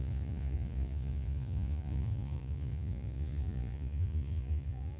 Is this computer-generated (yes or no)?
yes